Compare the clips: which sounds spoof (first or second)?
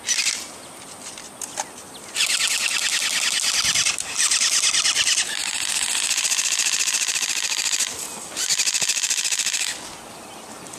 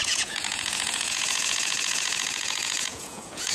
second